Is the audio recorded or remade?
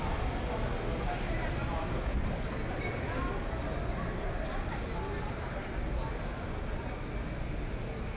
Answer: recorded